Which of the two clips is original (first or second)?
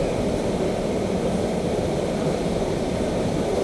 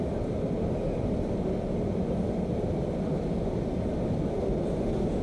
second